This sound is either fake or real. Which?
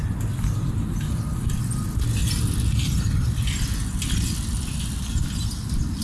real